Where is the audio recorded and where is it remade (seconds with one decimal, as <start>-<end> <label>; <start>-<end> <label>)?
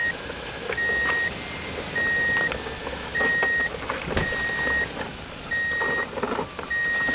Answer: 0.0-1.1 remade; 1.1-2.8 recorded; 2.8-3.3 remade; 3.3-7.1 recorded